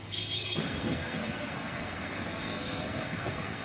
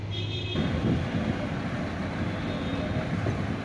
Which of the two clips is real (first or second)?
second